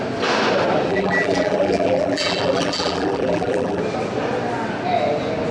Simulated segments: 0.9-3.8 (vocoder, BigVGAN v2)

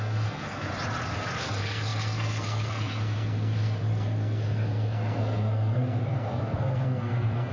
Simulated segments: 0.0-0.7 (codec, SNAC); 1.4-7.5

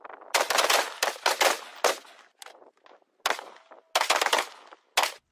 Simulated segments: none

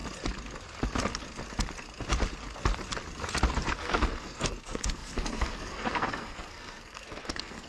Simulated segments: 3.7-7.7 (codec, SNAC)

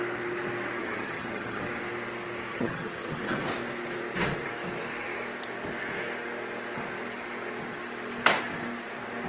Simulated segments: 0.8-1.6 (vocoder, HiFi-GAN); 2.5-3.5